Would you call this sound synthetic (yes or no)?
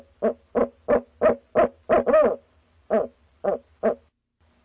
no